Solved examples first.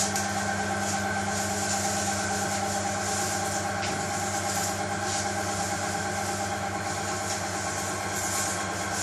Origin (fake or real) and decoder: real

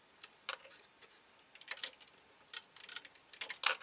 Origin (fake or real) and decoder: real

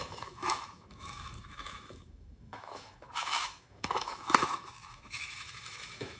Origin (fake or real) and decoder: fake, autoencoder, DAC-VAE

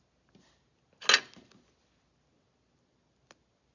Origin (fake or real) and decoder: real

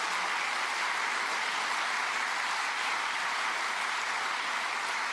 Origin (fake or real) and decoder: real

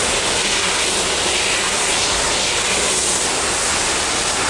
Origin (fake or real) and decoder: real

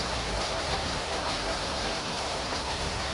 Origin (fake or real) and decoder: fake, codec, SNAC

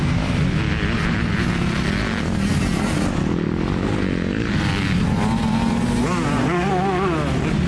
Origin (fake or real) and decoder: real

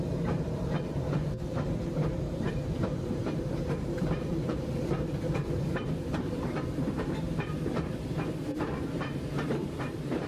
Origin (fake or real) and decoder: fake, vocoder, BigVGAN v2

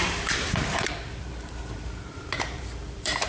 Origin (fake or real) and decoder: fake, vocoder, BigVGAN v2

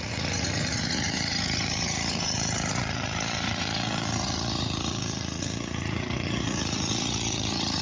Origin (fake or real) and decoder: fake, vocoder, Vocos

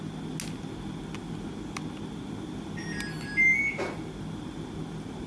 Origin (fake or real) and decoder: real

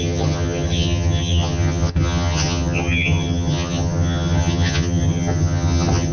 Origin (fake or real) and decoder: fake, vocoder, HiFi-GAN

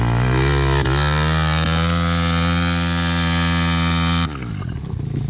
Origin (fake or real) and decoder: real